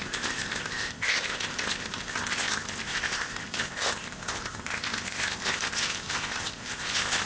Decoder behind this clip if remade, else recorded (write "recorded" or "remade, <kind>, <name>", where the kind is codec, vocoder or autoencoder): remade, codec, ZipCodec